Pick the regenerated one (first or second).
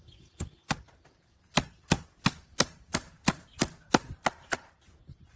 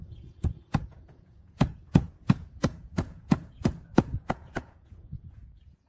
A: second